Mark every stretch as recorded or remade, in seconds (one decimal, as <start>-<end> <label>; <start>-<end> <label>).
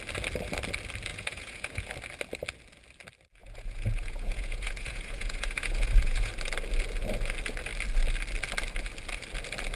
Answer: 0.0-1.1 recorded; 1.1-1.9 remade; 1.9-3.4 recorded; 3.4-6.3 remade; 6.3-9.8 recorded